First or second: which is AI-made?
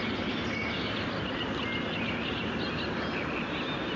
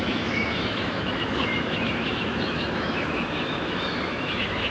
second